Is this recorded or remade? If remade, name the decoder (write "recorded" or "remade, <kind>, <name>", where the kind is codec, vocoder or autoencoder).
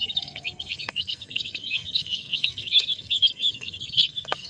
remade, codec, SNAC